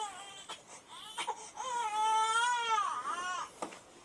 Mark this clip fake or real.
real